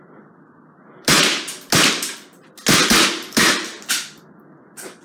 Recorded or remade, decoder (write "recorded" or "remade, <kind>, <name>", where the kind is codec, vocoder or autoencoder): recorded